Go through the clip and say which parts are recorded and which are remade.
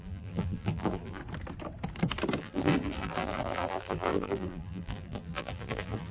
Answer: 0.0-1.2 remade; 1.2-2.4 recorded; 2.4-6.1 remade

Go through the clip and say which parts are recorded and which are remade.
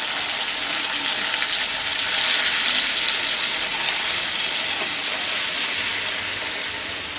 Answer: 0.0-3.7 recorded; 3.7-4.5 remade; 4.5-7.2 recorded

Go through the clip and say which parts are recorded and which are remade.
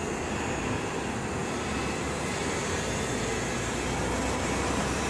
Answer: 0.0-5.1 recorded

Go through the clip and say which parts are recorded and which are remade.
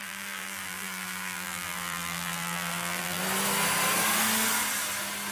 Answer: 0.0-3.2 remade; 3.2-5.3 recorded